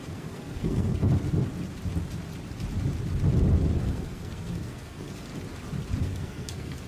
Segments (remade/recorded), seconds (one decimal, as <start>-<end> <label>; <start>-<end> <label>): 0.0-1.1 remade; 1.1-3.8 recorded; 3.8-5.3 remade; 5.3-6.0 recorded; 6.0-6.9 remade